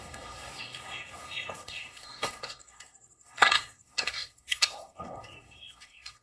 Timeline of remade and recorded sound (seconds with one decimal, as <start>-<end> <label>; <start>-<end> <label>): 0.0-6.2 remade